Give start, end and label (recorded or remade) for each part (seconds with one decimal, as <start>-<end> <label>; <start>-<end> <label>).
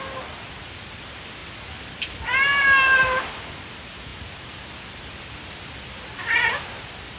0.0-7.2 recorded